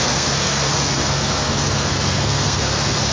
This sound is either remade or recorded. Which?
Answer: remade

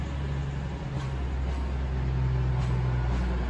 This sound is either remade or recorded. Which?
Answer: recorded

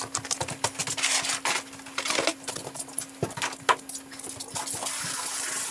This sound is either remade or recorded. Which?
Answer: recorded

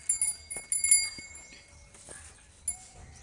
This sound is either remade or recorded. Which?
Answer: recorded